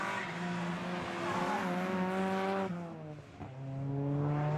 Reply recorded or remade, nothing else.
recorded